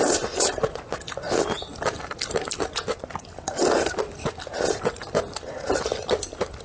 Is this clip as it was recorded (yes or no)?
yes